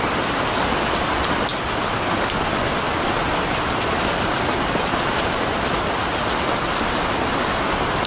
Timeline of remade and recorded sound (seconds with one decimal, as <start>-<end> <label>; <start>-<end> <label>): 0.0-8.1 recorded